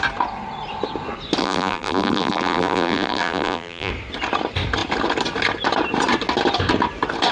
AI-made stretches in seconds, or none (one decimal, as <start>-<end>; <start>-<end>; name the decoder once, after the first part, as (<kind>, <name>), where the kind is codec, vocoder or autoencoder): 1.4-3.9 (vocoder, BigVGAN v2)